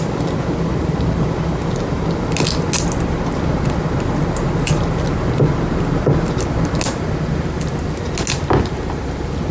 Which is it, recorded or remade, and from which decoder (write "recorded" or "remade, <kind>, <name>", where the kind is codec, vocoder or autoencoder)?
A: recorded